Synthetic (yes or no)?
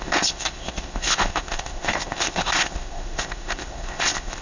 yes